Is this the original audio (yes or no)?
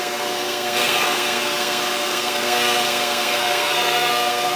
no